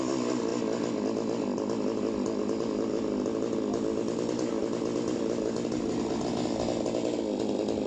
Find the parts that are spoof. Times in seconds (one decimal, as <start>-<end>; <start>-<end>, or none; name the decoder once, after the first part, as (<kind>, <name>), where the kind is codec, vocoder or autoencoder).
none